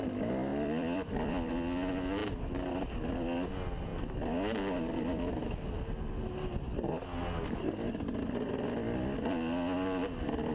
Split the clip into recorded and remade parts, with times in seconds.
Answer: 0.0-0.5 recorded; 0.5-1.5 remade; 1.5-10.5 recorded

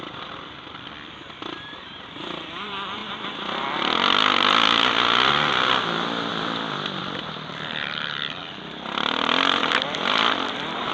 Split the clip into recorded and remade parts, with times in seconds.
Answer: 0.0-3.0 remade; 3.0-5.3 recorded; 5.3-10.9 remade

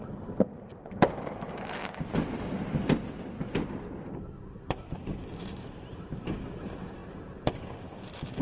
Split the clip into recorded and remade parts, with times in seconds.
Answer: 0.0-1.8 remade; 1.8-4.2 recorded; 4.2-8.4 remade

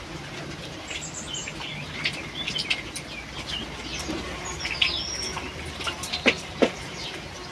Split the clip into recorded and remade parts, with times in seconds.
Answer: 0.0-3.9 recorded; 3.9-5.0 remade; 5.0-7.5 recorded

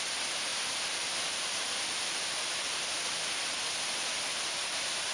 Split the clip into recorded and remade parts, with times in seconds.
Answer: 0.0-0.5 recorded; 0.5-1.7 remade; 1.7-5.1 recorded

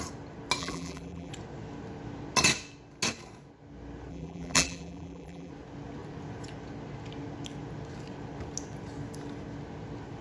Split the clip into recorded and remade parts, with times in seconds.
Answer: 0.0-0.6 recorded; 0.6-1.3 remade; 1.3-4.1 recorded; 4.1-5.5 remade; 5.5-10.2 recorded